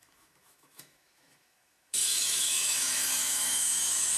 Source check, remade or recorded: remade